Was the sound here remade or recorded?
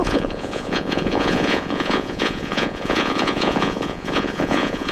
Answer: remade